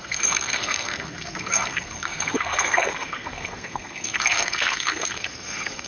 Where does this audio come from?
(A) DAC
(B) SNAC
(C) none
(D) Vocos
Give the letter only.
B